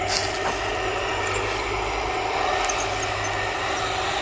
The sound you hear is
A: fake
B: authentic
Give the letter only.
B